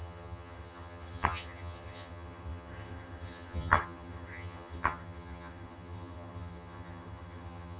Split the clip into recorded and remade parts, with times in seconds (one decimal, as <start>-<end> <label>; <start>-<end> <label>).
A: 0.0-7.8 remade